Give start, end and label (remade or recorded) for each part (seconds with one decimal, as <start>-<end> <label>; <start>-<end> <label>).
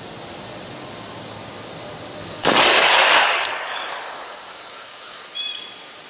0.0-2.2 recorded; 2.2-5.3 remade; 5.3-6.1 recorded